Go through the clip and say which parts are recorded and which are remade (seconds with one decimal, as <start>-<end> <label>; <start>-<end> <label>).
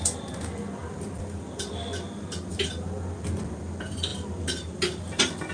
0.0-5.5 recorded